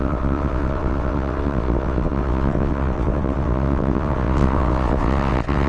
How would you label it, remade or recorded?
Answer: remade